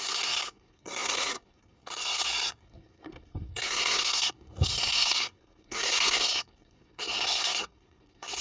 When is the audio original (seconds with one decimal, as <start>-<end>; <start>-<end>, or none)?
none